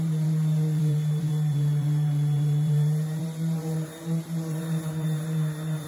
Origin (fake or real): fake